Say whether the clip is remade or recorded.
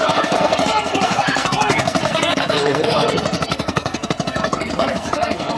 remade